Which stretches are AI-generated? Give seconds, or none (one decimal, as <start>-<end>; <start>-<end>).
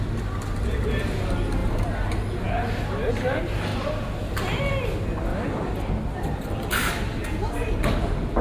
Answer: 3.7-4.3; 5.3-5.9